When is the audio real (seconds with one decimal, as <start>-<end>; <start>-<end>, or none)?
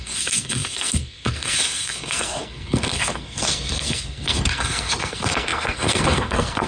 none